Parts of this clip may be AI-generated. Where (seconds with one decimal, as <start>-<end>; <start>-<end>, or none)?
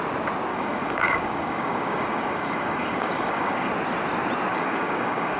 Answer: 0.5-3.7; 4.5-5.4